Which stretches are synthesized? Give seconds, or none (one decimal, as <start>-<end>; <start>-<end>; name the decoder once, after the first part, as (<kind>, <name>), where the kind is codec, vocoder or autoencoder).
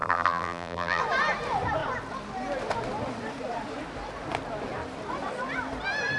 0.0-1.0 (vocoder, BigVGAN v2)